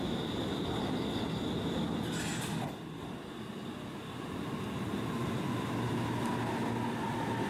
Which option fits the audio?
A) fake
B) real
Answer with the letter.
B